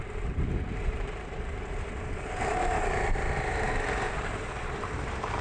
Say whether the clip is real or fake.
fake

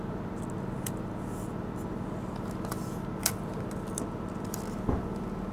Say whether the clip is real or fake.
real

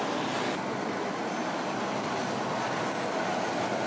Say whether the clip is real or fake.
real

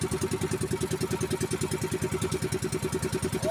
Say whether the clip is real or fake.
real